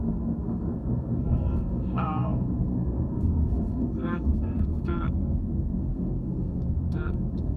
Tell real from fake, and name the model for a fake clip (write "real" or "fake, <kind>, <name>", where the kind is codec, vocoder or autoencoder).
fake, codec, SNAC